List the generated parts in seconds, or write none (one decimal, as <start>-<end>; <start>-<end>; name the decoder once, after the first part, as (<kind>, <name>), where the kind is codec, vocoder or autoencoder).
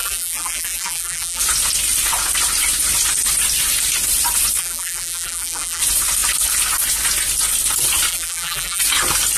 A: 0.0-1.4 (vocoder, BigVGAN v2); 4.6-5.8; 8.1-8.8